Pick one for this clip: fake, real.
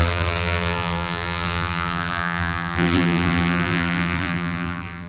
fake